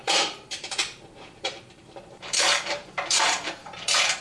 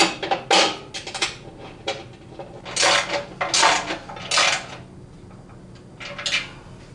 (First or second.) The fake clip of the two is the first